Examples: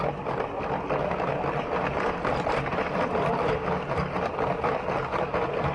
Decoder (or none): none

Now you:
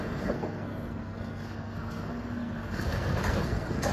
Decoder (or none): codec, SNAC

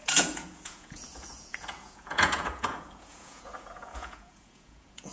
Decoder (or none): vocoder, Vocos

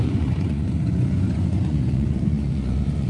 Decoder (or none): vocoder, Vocos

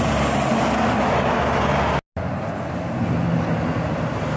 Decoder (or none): none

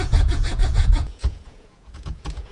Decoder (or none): vocoder, Vocos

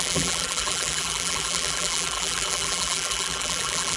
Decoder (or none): vocoder, BigVGAN v2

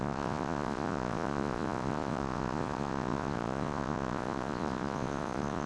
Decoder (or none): vocoder, Vocos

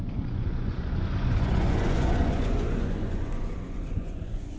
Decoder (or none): vocoder, Vocos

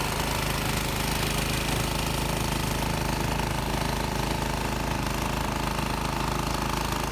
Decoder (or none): none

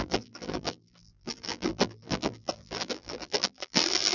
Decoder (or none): vocoder, BigVGAN v2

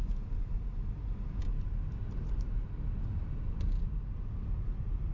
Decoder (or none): none